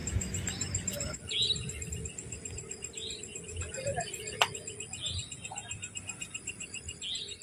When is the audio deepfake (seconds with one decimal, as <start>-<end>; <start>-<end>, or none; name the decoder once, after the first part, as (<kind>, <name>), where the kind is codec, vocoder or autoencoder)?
none